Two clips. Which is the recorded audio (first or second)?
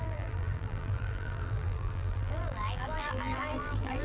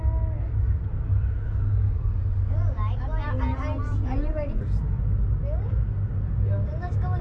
second